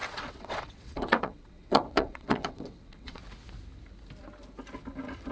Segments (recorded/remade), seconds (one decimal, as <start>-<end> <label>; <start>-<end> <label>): 0.0-3.2 remade; 3.2-5.3 recorded